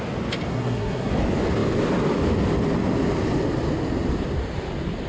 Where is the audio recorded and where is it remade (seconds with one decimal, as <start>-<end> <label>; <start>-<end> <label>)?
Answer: 0.0-0.5 recorded; 0.5-1.1 remade; 1.1-5.1 recorded